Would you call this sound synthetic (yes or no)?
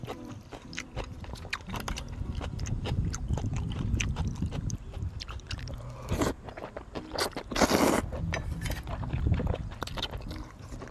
yes